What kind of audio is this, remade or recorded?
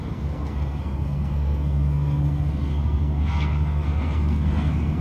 remade